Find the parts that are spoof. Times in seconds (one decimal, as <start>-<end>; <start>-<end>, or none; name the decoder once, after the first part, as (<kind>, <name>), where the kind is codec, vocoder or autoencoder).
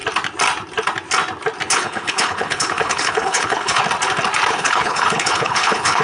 1.7-3.8 (codec, HILCodec); 4.5-6.0